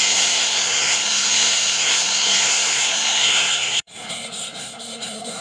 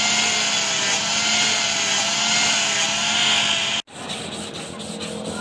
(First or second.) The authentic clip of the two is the second